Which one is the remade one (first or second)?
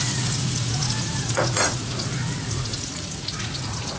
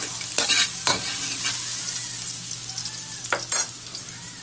first